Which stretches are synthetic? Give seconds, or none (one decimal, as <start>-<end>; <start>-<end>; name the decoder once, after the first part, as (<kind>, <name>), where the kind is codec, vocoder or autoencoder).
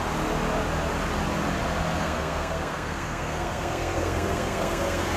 2.0-5.2 (codec, SNAC)